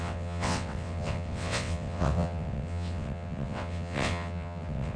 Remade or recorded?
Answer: remade